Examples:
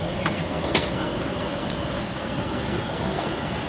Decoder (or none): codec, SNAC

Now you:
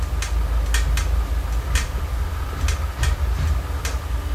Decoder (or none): none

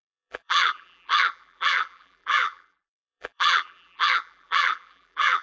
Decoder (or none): vocoder, BigVGAN v2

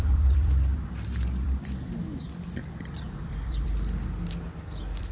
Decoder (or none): vocoder, BigVGAN v2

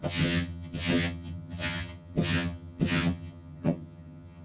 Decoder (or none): vocoder, HiFi-GAN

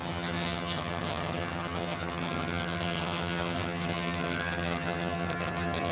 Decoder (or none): vocoder, HiFi-GAN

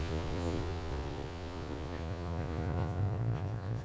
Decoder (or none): vocoder, Vocos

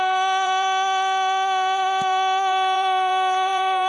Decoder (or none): vocoder, BigVGAN v2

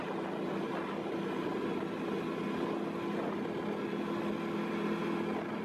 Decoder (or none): none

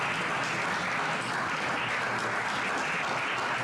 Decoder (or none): none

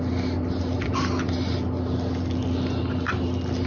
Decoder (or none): none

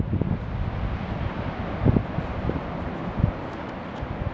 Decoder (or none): none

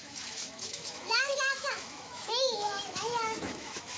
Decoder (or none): autoencoder, DAC-VAE